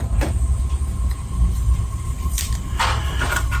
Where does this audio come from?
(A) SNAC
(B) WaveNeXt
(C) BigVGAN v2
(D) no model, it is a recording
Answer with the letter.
C